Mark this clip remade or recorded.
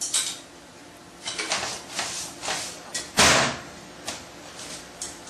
recorded